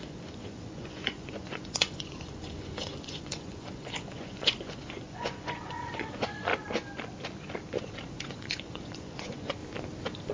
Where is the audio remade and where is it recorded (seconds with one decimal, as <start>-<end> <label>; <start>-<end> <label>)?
0.0-6.5 remade; 6.5-7.8 recorded; 7.8-9.6 remade; 9.6-10.3 recorded